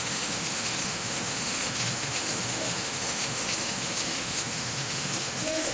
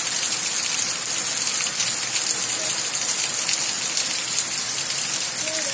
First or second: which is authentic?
second